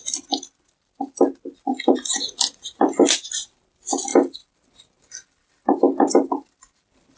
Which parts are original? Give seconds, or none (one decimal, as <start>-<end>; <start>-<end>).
0.0-1.7; 2.8-7.2